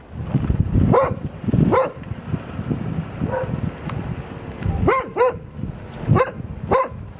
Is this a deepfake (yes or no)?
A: no